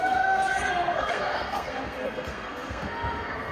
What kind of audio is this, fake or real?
fake